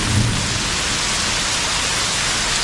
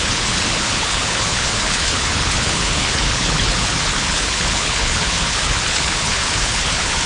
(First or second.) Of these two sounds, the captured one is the first